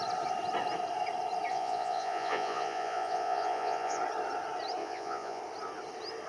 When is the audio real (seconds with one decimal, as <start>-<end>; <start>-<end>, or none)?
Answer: 0.0-1.5; 4.0-4.8; 5.4-6.3